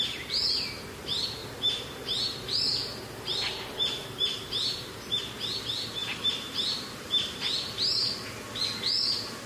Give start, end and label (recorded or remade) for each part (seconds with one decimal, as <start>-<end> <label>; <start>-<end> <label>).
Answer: 0.0-1.4 recorded; 1.4-5.2 remade; 5.2-6.0 recorded; 6.0-8.3 remade; 8.3-9.5 recorded